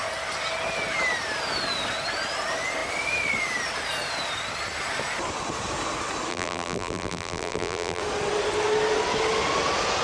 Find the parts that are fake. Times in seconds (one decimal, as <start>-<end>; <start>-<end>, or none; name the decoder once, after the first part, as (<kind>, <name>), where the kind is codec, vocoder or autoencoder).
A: 6.3-8.0 (vocoder, BigVGAN v2)